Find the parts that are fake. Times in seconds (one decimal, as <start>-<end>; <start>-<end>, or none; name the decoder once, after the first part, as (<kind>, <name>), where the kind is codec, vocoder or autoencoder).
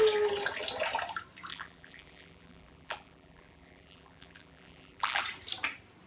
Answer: 1.5-5.2 (vocoder, BigVGAN v2)